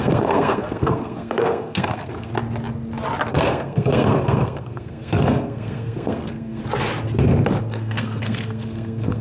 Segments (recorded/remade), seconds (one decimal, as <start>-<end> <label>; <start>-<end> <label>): 0.0-2.3 remade; 2.3-3.3 recorded; 3.3-6.6 remade; 6.6-7.6 recorded; 7.6-9.2 remade